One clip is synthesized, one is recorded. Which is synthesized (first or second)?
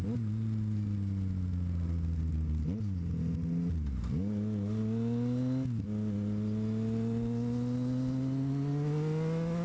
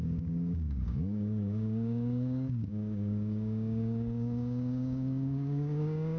second